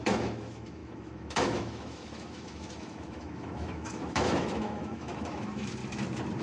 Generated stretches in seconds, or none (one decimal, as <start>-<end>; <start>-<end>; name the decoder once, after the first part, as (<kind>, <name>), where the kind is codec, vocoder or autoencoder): 0.0-5.8 (autoencoder, DAC-VAE)